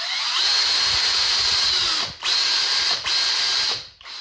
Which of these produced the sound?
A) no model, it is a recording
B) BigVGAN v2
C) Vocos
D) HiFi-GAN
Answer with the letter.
A